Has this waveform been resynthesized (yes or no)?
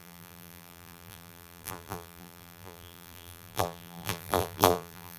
yes